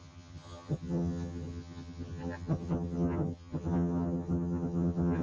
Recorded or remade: remade